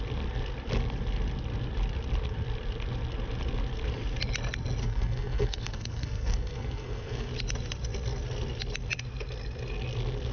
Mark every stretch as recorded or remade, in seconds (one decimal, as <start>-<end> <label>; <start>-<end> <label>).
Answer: 0.0-4.8 recorded; 4.8-7.3 remade; 7.3-10.3 recorded